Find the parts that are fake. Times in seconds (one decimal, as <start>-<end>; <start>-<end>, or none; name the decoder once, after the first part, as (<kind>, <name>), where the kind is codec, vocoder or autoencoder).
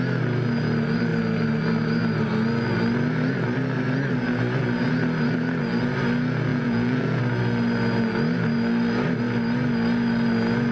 6.5-7.2 (vocoder, Vocos)